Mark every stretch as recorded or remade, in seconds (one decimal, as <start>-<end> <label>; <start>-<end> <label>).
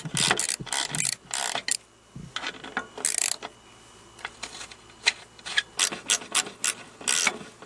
0.0-7.7 recorded